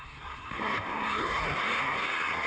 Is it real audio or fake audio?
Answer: fake